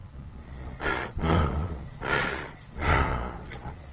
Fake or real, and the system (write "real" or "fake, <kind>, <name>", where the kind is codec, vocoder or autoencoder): fake, vocoder, Vocos